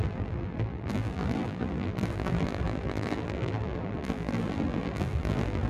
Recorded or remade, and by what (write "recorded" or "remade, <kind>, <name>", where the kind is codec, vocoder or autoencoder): remade, vocoder, BigVGAN v2